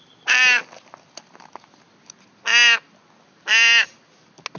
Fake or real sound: real